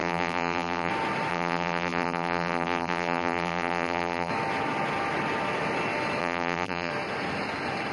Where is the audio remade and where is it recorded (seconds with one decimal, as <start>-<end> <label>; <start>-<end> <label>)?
0.0-0.9 remade; 0.9-1.3 recorded; 1.3-4.3 remade; 4.3-6.2 recorded; 6.2-6.9 remade; 6.9-7.9 recorded